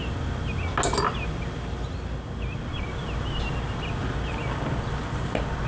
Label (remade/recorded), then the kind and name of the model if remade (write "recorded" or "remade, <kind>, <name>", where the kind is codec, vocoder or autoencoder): recorded